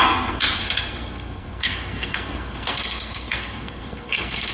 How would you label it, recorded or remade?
remade